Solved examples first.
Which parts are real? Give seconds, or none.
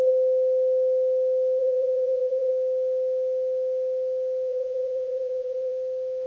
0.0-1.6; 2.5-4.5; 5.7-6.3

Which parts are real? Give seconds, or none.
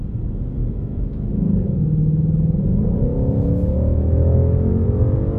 0.0-0.6; 1.3-3.1; 4.7-5.4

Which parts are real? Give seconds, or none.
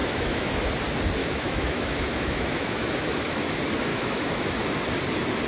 0.5-1.2; 3.5-3.9; 4.5-5.5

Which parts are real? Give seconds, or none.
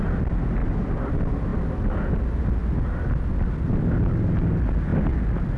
0.0-0.6; 1.1-5.6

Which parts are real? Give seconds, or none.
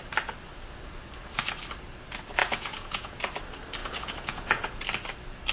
0.0-2.4; 3.2-3.8; 4.8-5.5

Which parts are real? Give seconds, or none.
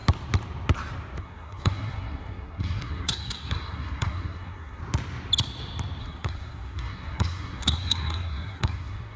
0.0-1.2; 4.8-6.0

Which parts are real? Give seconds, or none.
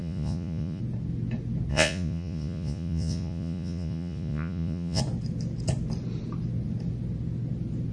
0.8-1.7; 5.0-7.9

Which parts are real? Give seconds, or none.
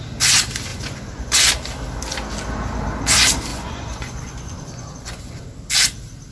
0.0-0.7; 1.5-3.5; 5.4-6.3